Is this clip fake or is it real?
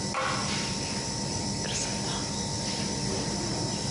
real